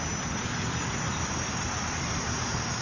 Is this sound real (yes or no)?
yes